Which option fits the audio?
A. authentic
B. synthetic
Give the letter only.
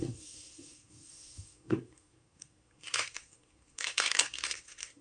B